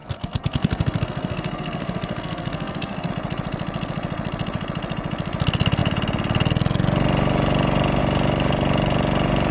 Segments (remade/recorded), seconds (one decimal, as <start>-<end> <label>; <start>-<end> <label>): 0.0-3.1 remade; 3.1-9.5 recorded